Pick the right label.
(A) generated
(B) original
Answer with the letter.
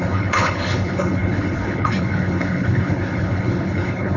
A